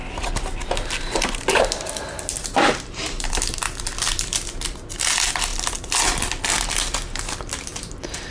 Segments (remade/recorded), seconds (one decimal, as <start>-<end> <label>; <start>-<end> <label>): 0.0-8.3 recorded